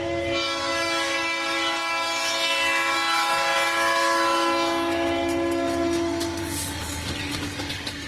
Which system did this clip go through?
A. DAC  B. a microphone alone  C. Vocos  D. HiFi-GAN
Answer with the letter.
A